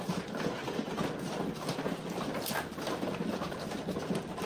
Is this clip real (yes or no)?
yes